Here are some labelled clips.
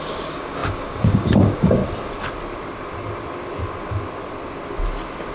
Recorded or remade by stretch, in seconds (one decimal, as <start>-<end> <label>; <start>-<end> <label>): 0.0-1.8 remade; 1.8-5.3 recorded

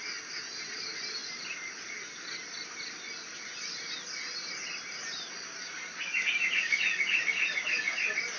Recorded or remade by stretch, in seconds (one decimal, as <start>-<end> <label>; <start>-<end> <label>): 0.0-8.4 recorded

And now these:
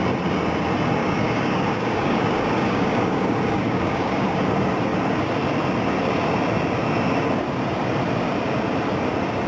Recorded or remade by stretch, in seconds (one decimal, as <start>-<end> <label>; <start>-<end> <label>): 0.0-1.0 recorded; 1.0-4.4 remade; 4.4-9.5 recorded

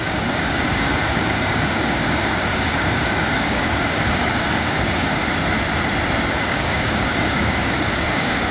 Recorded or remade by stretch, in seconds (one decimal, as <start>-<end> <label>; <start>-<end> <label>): 0.0-5.2 remade; 5.2-6.3 recorded; 6.3-8.5 remade

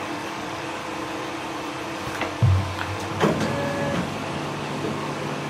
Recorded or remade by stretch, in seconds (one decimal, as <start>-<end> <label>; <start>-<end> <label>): 0.0-0.8 remade; 0.8-2.1 recorded; 2.1-5.5 remade